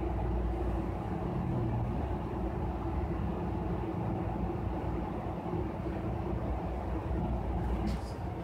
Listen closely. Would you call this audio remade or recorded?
recorded